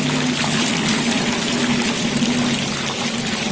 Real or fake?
real